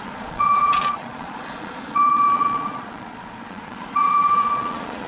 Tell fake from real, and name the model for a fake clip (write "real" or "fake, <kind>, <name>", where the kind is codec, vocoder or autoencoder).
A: fake, vocoder, Vocos